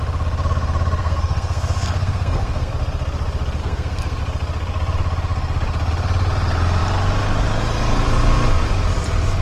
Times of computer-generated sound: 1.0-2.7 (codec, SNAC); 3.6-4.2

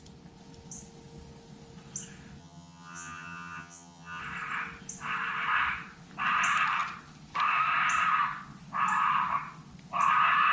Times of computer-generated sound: 2.4-4.2 (vocoder, HiFi-GAN)